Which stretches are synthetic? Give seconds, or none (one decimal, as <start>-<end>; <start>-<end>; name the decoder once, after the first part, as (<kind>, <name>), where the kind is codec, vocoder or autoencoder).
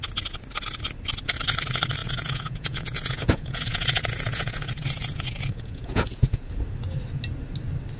2.0-6.5 (vocoder, Vocos)